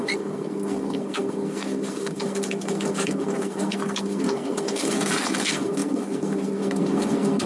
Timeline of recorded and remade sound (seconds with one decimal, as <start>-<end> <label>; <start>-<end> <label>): 0.0-7.5 remade